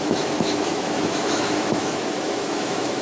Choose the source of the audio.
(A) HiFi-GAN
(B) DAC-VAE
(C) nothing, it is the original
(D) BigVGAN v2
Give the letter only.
B